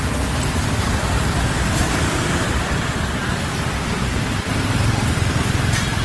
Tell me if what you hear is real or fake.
real